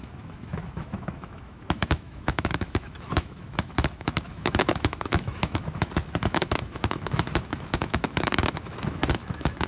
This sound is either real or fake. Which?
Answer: fake